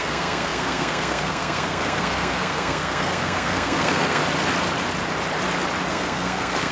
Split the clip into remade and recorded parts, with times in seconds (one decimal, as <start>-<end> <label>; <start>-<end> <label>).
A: 0.0-4.2 remade; 4.2-5.9 recorded; 5.9-6.7 remade